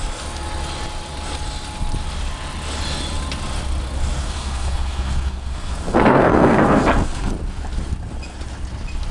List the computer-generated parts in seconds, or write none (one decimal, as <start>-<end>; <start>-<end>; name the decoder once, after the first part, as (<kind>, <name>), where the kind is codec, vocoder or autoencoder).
4.2-7.3 (codec, SNAC)